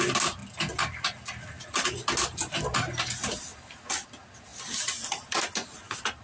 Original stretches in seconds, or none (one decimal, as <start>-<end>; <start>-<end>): 0.0-6.2